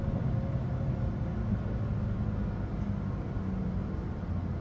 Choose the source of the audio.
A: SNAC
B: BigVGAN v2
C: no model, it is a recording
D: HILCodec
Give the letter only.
C